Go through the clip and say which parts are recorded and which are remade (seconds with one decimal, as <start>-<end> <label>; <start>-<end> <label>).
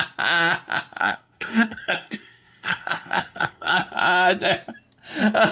0.0-1.0 recorded; 1.0-3.9 remade; 3.9-5.5 recorded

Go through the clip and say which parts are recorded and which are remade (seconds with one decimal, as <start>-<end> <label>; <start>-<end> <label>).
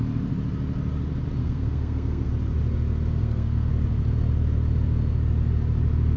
0.0-1.4 recorded; 1.4-2.3 remade; 2.3-3.2 recorded; 3.2-3.7 remade; 3.7-6.2 recorded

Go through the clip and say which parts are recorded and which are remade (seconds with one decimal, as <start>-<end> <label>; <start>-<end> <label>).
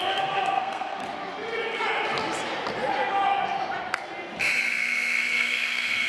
0.0-1.0 remade; 1.0-4.7 recorded; 4.7-6.1 remade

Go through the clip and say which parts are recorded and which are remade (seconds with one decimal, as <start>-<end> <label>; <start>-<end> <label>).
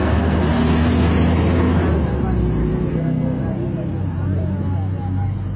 0.0-0.4 remade; 0.4-2.9 recorded; 2.9-3.4 remade; 3.4-5.6 recorded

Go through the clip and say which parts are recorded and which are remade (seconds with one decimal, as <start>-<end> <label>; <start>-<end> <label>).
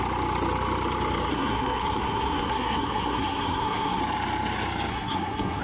0.0-1.3 recorded; 1.3-4.0 remade; 4.0-4.9 recorded; 4.9-5.6 remade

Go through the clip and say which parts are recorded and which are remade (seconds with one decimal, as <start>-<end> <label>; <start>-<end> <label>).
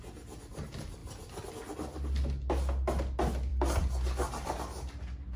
0.0-5.4 recorded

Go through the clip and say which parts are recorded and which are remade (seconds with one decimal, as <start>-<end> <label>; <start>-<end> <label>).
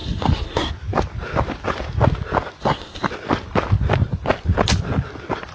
0.0-0.7 remade; 0.7-2.6 recorded; 2.6-3.1 remade; 3.1-5.5 recorded